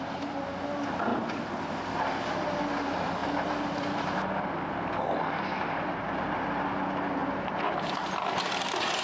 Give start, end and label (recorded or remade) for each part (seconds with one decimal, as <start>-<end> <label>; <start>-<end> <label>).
0.0-3.2 recorded; 3.2-5.9 remade; 5.9-9.0 recorded